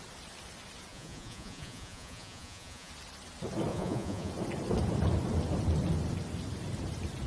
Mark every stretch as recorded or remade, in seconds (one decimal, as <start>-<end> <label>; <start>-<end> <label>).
0.0-0.9 recorded; 0.9-2.9 remade; 2.9-3.7 recorded; 3.7-4.3 remade; 4.3-7.3 recorded